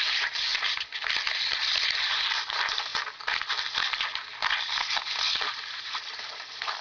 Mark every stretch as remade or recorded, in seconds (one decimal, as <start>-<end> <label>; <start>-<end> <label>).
0.0-0.5 remade; 0.5-2.0 recorded; 2.0-2.9 remade; 2.9-5.5 recorded; 5.5-6.8 remade